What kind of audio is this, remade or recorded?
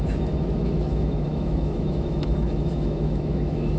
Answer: remade